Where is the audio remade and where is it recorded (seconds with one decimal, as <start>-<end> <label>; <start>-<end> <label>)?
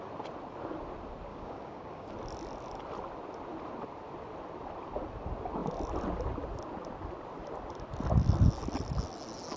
0.0-1.3 recorded; 1.3-2.1 remade; 2.1-9.6 recorded